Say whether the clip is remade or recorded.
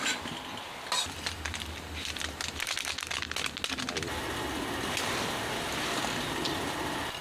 recorded